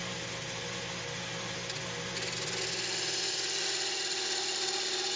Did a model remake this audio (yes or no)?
no